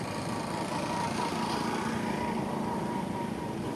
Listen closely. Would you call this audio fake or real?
real